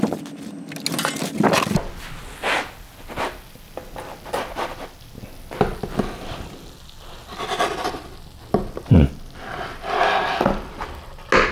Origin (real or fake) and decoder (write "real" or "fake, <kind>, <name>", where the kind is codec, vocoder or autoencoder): real